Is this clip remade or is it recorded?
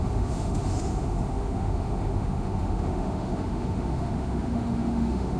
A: remade